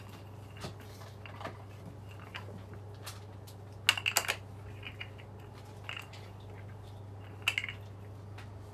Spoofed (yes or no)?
no